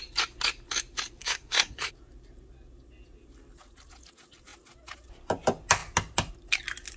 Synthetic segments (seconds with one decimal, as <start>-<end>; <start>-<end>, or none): 1.2-1.9